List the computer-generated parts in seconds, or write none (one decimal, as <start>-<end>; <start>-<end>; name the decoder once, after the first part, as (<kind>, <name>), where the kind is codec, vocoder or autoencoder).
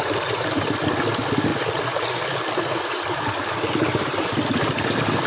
none